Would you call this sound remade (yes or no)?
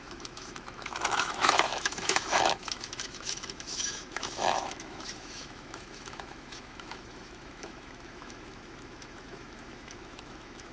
yes